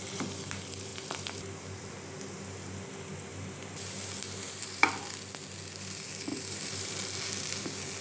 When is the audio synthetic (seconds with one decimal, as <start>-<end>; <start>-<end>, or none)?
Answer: 0.9-1.9; 3.3-5.0; 6.3-6.9